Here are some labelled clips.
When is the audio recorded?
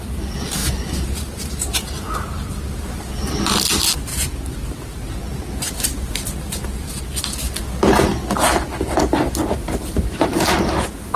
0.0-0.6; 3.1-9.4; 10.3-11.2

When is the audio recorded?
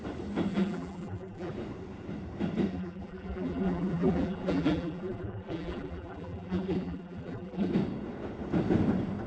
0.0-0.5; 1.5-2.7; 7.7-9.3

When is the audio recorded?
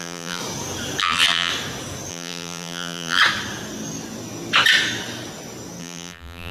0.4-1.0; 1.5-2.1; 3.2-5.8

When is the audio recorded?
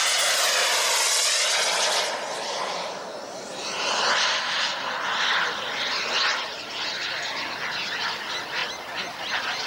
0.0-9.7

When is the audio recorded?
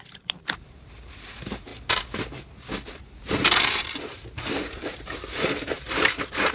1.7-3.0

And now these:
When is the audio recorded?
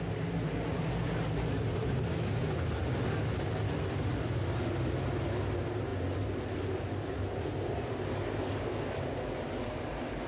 0.0-10.3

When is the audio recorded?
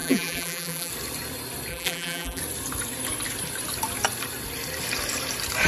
0.9-1.7; 2.4-5.7